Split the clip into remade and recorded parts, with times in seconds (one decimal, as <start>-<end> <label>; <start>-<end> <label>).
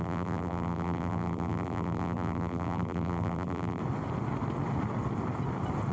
0.0-3.8 remade; 3.8-5.9 recorded